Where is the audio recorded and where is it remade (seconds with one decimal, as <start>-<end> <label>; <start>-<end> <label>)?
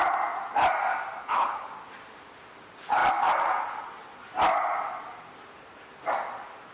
0.0-1.2 recorded; 1.2-1.7 remade; 1.7-6.7 recorded